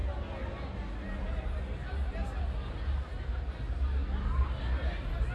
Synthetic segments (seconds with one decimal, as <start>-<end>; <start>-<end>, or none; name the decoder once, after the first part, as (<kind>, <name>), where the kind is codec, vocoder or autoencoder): none